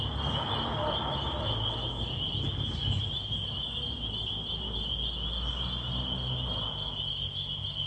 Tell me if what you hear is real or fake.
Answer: real